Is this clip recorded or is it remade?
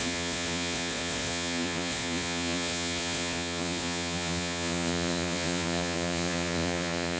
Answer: remade